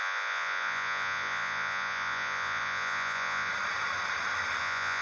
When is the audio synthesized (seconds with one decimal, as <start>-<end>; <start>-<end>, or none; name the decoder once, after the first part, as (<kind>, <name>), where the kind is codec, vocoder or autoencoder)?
0.0-3.5 (vocoder, Vocos); 4.6-5.0

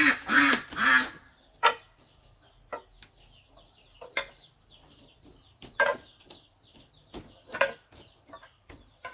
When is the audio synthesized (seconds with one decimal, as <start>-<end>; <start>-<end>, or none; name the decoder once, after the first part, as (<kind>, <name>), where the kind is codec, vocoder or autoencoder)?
0.0-5.9 (vocoder, BigVGAN v2); 6.8-9.1

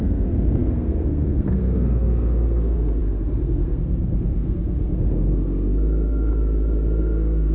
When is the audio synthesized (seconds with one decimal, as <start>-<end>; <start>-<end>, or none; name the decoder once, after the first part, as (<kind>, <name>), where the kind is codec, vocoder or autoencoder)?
0.0-6.3 (codec, SNAC); 7.0-7.5

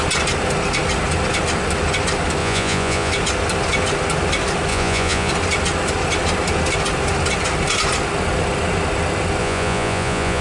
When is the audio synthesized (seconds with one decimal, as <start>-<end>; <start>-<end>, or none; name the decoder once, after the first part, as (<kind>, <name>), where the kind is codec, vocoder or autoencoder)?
2.4-3.1 (vocoder, Vocos); 4.7-5.3; 9.4-10.4

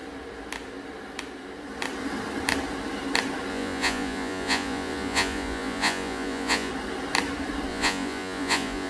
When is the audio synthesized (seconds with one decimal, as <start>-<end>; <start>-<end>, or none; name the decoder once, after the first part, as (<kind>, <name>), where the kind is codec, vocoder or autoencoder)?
3.5-6.7 (vocoder, Vocos); 7.7-8.9

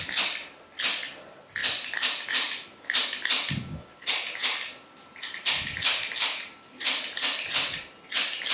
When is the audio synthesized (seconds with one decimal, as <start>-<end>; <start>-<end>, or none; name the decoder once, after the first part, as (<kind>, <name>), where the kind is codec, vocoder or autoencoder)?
none

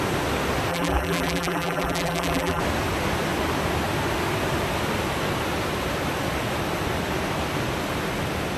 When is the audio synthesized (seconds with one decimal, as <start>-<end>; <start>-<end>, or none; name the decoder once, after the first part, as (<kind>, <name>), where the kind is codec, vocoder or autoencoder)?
0.7-2.6 (vocoder, BigVGAN v2)